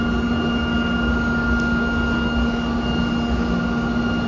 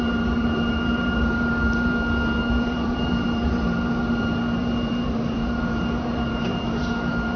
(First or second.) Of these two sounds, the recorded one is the first